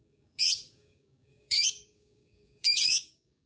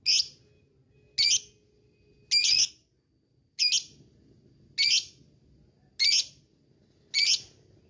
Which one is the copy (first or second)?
first